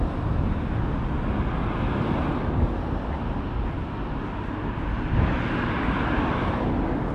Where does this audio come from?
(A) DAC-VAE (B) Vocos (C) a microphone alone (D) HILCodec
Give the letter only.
C